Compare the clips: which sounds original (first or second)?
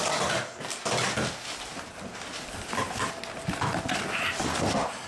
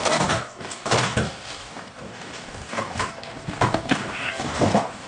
first